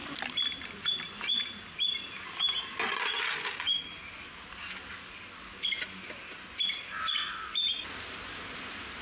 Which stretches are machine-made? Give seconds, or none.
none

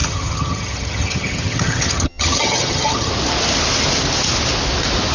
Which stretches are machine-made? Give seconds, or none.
0.0-3.1

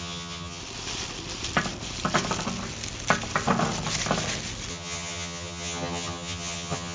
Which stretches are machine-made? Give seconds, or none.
0.0-0.6; 4.7-6.9

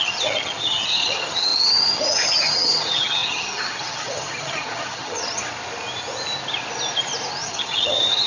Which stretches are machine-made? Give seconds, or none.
0.0-5.4; 7.4-8.3

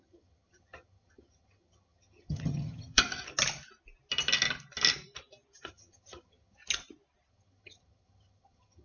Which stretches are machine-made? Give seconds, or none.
0.0-3.0; 5.7-6.6; 7.3-8.8

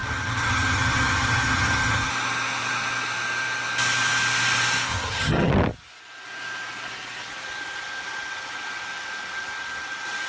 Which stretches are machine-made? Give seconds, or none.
0.0-2.1; 4.9-5.5

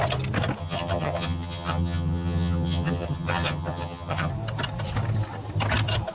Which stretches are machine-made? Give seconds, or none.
0.6-4.3

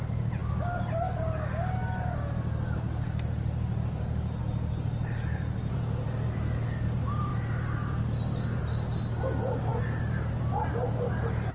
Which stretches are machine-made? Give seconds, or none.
none